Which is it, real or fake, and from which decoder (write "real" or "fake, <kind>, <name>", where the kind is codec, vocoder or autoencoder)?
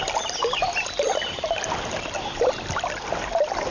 real